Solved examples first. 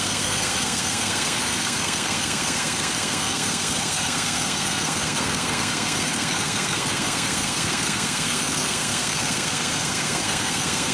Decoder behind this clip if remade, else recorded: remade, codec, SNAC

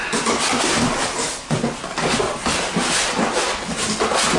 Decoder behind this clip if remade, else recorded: recorded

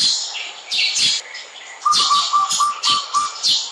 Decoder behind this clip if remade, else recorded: remade, vocoder, BigVGAN v2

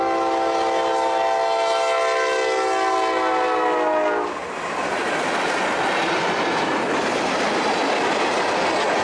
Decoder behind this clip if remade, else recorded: recorded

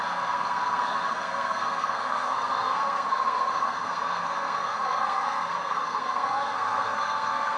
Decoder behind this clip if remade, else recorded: remade, codec, SNAC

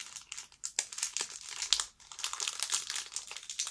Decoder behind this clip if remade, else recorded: recorded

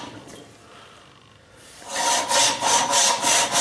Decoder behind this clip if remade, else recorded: recorded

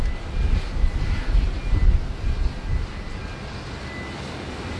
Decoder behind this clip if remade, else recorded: recorded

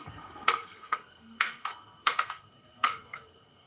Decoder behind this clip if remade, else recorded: remade, codec, SNAC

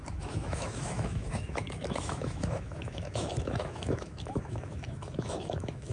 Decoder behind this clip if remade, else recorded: remade, autoencoder, DAC-VAE